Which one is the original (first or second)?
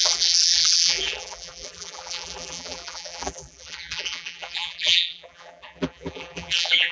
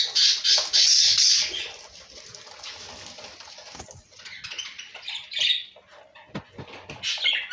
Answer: second